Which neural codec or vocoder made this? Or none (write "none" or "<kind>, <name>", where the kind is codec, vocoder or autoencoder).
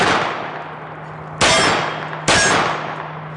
none